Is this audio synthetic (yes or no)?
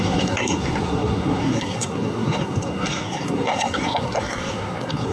yes